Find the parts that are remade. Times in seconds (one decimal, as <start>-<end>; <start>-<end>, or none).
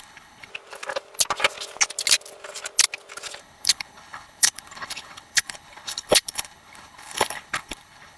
0.0-0.5; 3.4-8.2